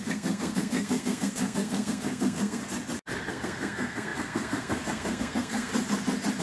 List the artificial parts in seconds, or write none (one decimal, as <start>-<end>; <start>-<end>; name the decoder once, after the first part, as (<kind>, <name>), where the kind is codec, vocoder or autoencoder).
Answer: 0.0-2.6 (codec, SNAC); 3.3-5.7